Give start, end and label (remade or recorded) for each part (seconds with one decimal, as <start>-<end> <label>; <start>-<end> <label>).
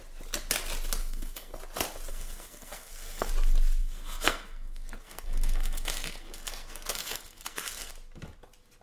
0.0-1.0 recorded; 1.0-1.6 remade; 1.6-2.1 recorded; 2.1-3.3 remade; 3.3-3.8 recorded; 3.8-7.9 remade; 7.9-8.8 recorded